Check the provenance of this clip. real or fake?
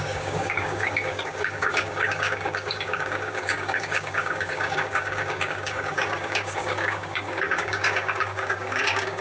fake